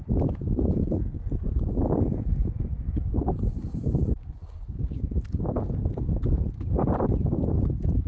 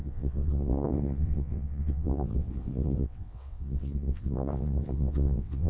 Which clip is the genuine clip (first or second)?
first